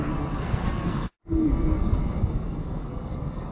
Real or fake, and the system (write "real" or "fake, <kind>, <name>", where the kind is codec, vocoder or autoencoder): fake, codec, SNAC